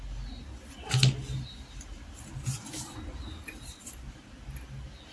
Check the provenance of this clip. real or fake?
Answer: real